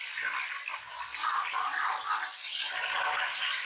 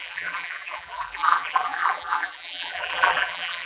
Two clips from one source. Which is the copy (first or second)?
second